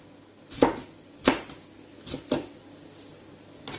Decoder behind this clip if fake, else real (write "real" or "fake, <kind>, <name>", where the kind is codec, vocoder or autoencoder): real